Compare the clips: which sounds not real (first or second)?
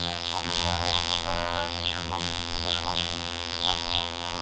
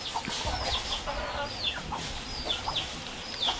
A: first